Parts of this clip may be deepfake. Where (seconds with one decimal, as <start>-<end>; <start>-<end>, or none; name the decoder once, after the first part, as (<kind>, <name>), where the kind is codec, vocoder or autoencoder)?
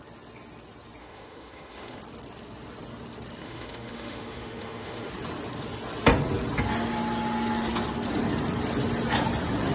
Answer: 1.0-2.0 (autoencoder, DAC-VAE); 3.4-5.1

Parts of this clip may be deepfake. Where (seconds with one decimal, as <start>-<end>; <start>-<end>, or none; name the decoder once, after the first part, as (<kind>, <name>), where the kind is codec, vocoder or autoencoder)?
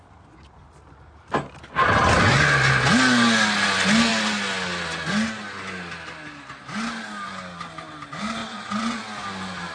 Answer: 8.4-9.0 (vocoder, WaveNeXt)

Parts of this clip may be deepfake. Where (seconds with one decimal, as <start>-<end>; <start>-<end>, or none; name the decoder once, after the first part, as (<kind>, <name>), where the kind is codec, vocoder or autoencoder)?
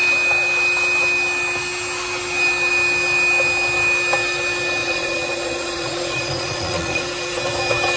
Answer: 4.8-7.0 (vocoder, Vocos)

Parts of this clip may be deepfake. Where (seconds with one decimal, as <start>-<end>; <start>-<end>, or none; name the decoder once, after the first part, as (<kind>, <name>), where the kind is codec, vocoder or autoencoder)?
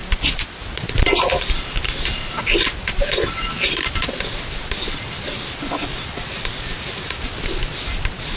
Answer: none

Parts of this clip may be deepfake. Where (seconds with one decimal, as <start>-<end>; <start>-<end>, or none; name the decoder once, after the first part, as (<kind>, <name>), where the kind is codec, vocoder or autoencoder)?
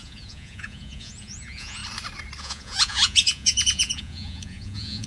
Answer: 0.0-1.8 (vocoder, Vocos); 2.4-5.1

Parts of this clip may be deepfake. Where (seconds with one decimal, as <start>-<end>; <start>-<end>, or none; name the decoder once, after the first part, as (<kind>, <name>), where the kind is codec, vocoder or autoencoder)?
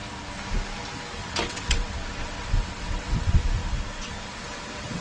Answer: 1.1-5.0 (vocoder, WaveNeXt)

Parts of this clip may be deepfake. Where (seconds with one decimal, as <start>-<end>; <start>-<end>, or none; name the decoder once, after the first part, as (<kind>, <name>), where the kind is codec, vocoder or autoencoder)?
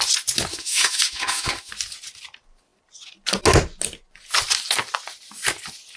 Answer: 0.5-1.7 (autoencoder, DAC-VAE)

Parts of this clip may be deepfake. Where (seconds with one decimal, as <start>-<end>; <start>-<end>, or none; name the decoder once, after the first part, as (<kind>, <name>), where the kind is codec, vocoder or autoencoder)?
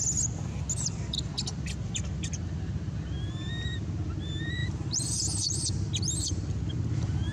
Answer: 4.6-6.0 (vocoder, BigVGAN v2)